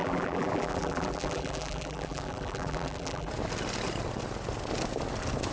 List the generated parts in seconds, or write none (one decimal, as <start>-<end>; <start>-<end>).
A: 0.0-3.3